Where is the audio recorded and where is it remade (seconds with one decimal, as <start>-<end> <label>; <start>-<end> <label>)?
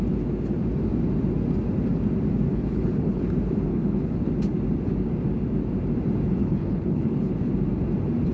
0.0-2.5 recorded; 2.5-3.2 remade; 3.2-3.7 recorded; 3.7-4.3 remade; 4.3-6.4 recorded; 6.4-7.5 remade; 7.5-8.3 recorded